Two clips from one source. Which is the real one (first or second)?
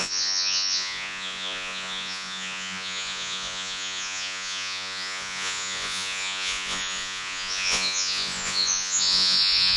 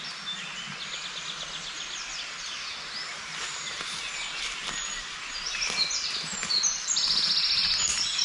second